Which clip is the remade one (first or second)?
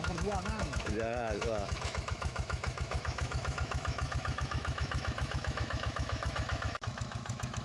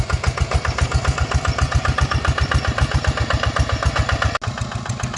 first